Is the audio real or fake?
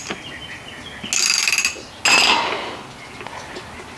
real